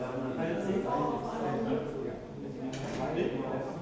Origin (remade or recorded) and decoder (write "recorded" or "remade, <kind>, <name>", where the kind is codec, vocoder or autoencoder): recorded